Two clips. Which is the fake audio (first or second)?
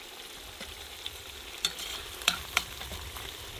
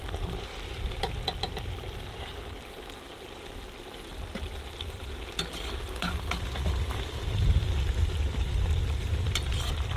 first